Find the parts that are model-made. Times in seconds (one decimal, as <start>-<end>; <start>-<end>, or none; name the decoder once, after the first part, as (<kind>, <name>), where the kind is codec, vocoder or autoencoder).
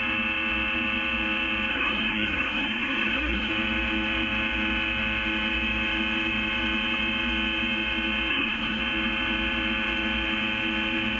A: 1.7-3.5 (codec, SNAC); 8.3-8.8